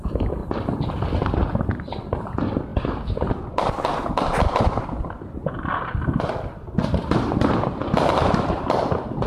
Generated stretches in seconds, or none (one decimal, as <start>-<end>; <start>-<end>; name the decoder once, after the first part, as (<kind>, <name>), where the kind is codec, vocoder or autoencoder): none

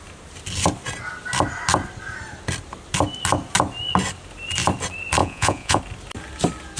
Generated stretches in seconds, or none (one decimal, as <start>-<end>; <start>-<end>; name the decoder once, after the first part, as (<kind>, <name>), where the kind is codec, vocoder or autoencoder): 5.2-5.8 (vocoder, Vocos)